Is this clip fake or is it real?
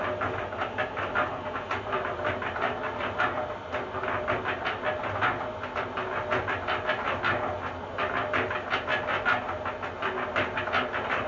real